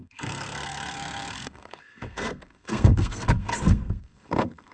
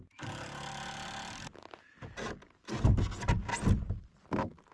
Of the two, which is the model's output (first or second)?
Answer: first